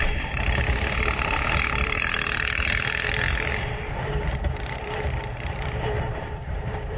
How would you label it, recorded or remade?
remade